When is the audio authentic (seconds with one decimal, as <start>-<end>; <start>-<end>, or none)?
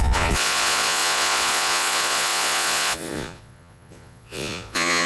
none